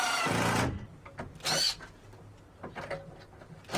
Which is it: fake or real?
real